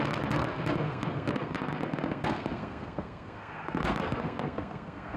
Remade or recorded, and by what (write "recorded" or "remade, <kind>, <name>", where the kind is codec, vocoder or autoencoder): remade, codec, SNAC